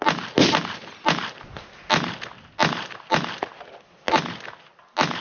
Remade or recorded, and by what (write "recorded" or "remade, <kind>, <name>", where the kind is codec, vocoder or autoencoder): recorded